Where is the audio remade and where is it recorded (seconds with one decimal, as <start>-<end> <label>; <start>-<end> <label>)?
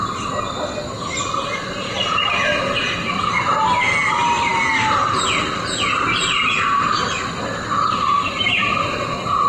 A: 0.0-9.5 recorded